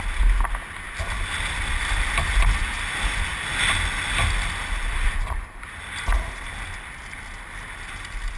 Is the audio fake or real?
real